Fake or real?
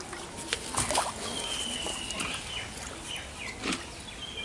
real